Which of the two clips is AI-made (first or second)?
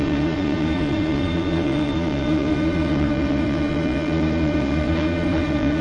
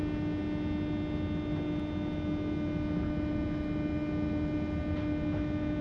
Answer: first